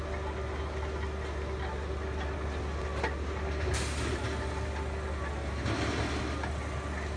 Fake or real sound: real